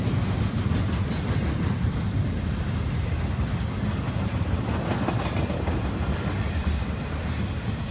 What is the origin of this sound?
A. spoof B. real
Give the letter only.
B